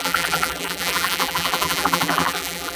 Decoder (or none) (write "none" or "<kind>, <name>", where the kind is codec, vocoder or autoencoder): vocoder, BigVGAN v2